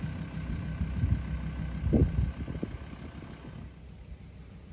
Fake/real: real